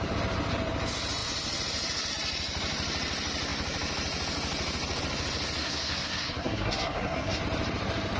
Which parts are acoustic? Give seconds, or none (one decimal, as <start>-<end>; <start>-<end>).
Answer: 0.0-5.6; 7.4-8.2